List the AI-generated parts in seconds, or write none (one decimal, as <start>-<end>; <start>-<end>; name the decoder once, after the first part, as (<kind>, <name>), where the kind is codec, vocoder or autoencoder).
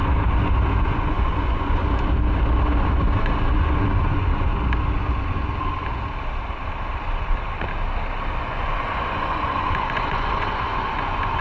0.8-1.8 (vocoder, Vocos); 3.2-4.5; 8.4-11.4